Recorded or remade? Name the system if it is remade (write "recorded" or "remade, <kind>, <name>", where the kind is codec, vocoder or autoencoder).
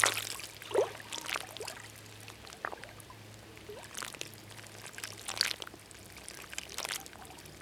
recorded